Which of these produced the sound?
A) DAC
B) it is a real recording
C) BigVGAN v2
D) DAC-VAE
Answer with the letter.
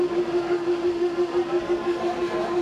B